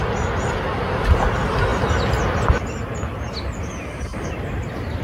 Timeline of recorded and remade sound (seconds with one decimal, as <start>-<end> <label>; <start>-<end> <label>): 0.0-4.1 recorded; 4.1-5.0 remade